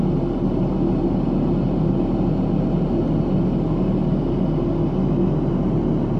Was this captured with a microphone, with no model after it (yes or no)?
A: yes